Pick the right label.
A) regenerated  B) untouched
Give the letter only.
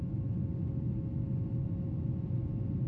B